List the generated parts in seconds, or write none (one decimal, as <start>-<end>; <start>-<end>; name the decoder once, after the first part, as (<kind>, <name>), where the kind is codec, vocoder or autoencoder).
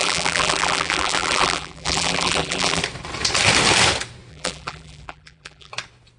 0.0-2.8 (vocoder, BigVGAN v2); 4.3-5.7